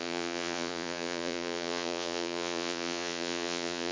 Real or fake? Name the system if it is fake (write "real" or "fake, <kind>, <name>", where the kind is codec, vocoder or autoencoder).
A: fake, vocoder, Vocos